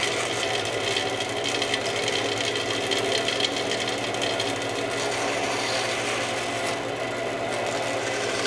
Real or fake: real